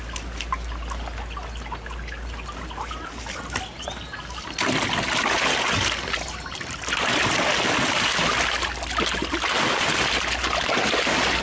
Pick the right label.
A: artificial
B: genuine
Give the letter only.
B